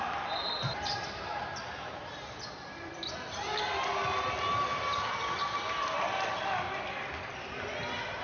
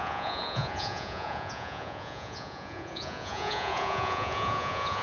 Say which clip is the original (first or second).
first